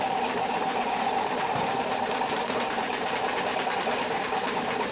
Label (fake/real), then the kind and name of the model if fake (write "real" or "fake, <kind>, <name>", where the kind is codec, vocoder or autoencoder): fake, vocoder, BigVGAN v2